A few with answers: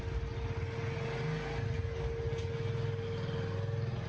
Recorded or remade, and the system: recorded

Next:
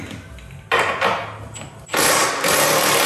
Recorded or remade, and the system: recorded